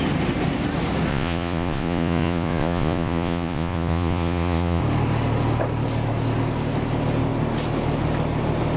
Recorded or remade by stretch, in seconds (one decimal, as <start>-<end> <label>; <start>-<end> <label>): 0.0-1.1 recorded; 1.1-4.8 remade; 4.8-8.8 recorded